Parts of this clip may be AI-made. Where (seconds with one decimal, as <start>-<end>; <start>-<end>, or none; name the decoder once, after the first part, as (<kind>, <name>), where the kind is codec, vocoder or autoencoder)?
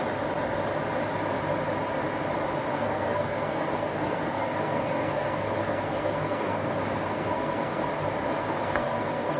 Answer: 2.7-7.8 (codec, SNAC); 8.4-9.4